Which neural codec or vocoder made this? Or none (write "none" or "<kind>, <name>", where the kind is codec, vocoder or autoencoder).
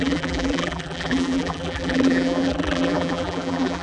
vocoder, BigVGAN v2